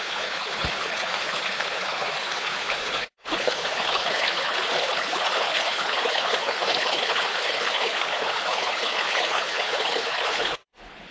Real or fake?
fake